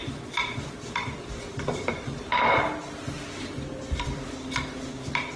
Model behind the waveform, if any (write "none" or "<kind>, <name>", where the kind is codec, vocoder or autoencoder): none